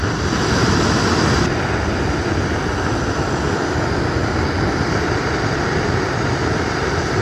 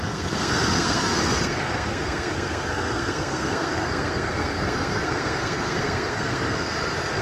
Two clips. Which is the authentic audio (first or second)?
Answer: first